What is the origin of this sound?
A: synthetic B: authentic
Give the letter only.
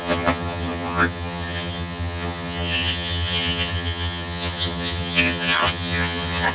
A